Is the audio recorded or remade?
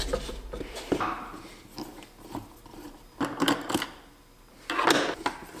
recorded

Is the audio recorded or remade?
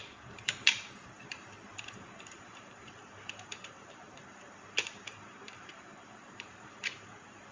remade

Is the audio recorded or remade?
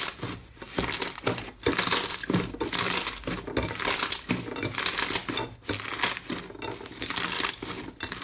recorded